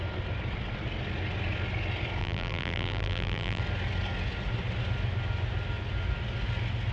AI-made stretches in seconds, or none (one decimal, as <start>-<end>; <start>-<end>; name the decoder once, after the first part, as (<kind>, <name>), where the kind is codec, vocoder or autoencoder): 2.2-3.6 (vocoder, BigVGAN v2)

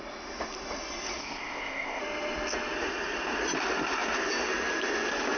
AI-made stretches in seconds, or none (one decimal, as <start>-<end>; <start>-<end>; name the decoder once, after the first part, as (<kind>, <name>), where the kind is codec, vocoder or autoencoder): 1.2-2.0 (codec, ZipCodec)

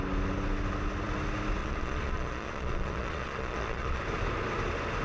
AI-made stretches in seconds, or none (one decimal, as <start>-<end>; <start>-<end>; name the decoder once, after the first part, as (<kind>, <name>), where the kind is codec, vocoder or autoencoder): 1.6-4.0 (vocoder, Vocos)

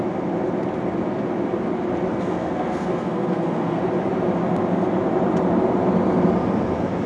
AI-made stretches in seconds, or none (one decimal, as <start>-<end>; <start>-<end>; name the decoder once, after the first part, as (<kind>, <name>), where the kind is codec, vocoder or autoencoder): 2.1-3.8 (codec, SNAC)

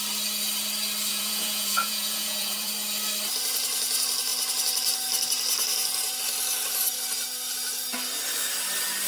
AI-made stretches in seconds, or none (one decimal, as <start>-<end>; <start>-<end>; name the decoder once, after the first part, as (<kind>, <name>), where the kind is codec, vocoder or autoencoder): 1.1-2.7 (vocoder, Vocos)

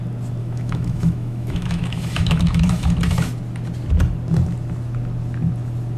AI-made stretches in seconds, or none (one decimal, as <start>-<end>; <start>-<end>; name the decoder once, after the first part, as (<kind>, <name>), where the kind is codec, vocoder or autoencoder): 0.4-2.9 (autoencoder, DAC-VAE)